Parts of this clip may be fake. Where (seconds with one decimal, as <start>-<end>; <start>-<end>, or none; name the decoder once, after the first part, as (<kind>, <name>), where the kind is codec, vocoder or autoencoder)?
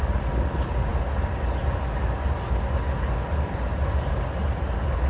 none